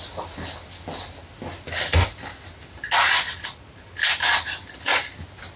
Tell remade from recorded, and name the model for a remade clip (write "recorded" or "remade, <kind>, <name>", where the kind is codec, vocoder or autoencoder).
recorded